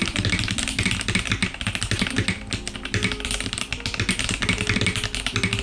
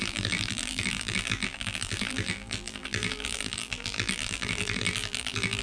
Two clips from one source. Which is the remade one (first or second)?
second